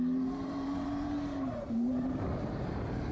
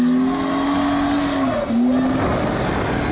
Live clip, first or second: second